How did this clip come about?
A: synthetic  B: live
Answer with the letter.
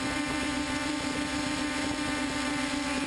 A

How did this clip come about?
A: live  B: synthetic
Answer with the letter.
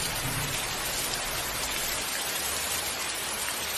A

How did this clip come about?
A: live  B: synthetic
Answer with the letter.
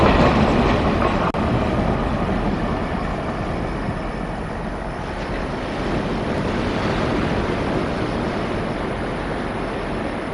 A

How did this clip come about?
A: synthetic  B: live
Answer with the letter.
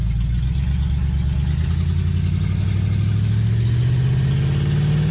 B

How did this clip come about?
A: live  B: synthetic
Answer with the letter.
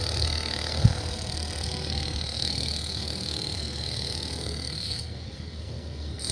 B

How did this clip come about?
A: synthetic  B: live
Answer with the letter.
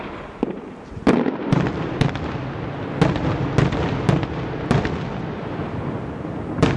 B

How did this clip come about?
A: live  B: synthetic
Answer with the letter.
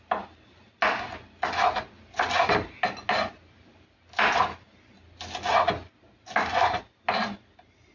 A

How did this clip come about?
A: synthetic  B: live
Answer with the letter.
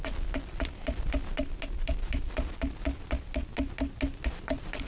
B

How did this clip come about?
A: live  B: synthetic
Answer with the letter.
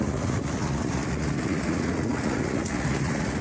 B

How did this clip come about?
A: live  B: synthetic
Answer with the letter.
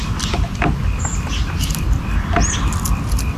A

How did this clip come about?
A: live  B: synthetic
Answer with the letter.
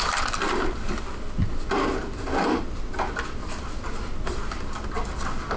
A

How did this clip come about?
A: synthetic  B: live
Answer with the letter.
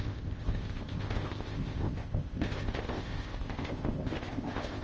A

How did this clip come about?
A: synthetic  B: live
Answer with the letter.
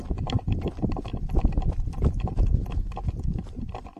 B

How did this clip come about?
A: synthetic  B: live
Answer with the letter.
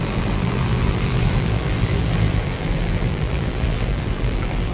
A